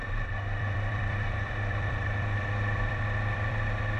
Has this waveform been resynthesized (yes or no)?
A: yes